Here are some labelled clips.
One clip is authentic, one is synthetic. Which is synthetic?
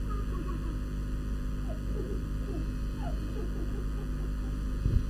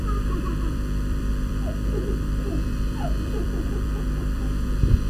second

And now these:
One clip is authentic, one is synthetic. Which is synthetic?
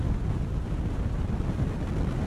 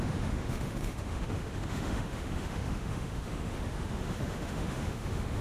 second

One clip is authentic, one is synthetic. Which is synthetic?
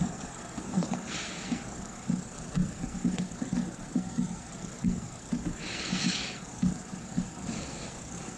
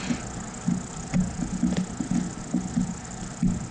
first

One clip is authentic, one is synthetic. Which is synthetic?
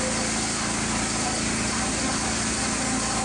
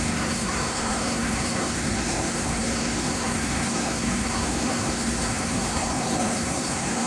second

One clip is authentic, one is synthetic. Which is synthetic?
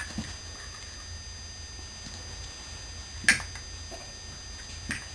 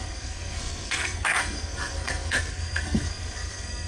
second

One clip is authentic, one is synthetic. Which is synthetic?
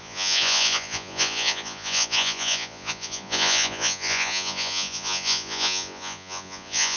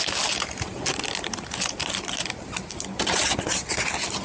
first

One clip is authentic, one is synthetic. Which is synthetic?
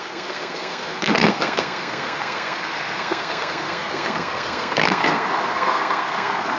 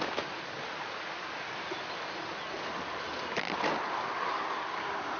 first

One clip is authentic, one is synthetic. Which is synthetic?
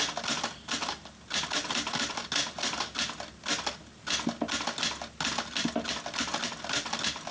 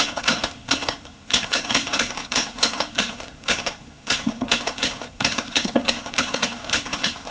second